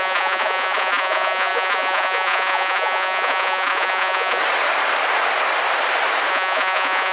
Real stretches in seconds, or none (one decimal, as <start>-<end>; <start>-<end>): 4.4-6.3